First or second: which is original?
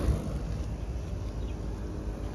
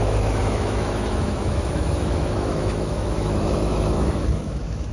first